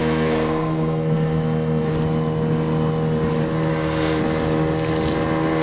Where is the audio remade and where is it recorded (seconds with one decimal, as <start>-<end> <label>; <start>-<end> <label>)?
0.0-1.9 remade; 1.9-3.7 recorded; 3.7-4.2 remade; 4.2-5.6 recorded